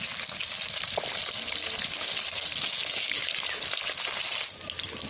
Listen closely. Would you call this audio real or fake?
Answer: real